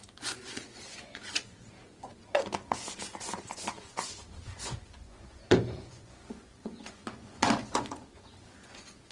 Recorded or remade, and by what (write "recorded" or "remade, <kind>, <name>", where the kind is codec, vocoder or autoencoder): remade, vocoder, Vocos